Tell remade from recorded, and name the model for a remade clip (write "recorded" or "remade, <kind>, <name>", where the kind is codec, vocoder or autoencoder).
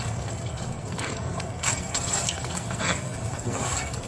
remade, codec, SNAC